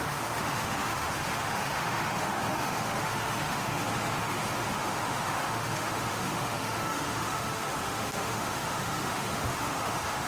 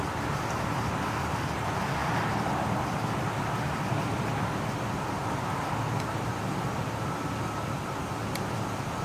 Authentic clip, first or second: second